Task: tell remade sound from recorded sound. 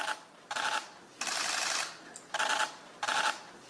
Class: recorded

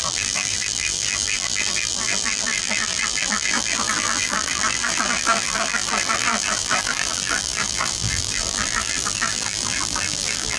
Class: remade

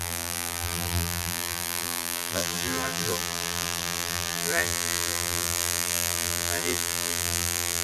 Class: remade